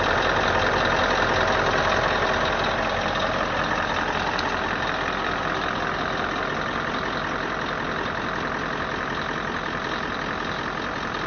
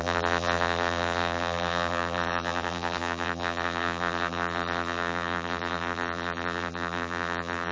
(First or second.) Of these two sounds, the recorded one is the first